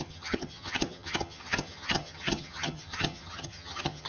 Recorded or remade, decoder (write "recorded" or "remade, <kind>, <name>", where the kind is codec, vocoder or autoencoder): remade, vocoder, HiFi-GAN